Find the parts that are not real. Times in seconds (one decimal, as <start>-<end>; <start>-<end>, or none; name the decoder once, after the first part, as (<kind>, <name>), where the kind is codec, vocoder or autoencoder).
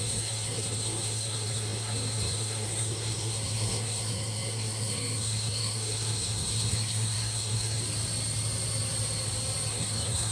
0.0-7.8 (codec, SNAC); 9.7-10.3